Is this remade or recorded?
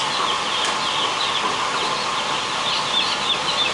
recorded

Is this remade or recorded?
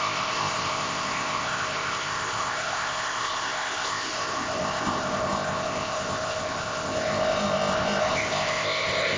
remade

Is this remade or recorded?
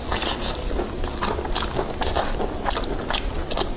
recorded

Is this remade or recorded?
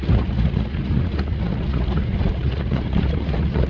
remade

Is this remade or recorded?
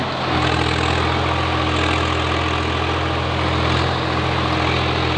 recorded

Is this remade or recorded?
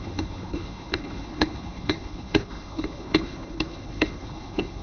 remade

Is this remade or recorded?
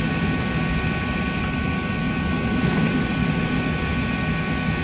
recorded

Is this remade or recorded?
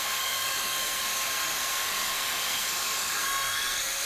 remade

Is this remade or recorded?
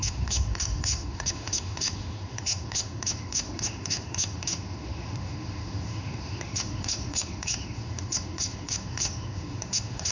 remade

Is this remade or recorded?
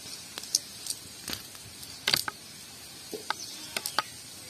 recorded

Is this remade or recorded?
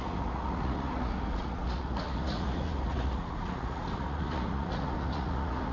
remade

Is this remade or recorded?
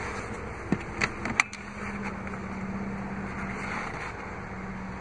recorded